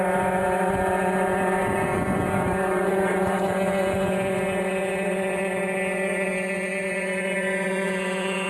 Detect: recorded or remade remade